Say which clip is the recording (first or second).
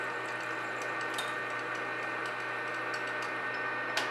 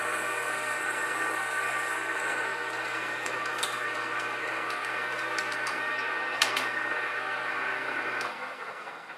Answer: first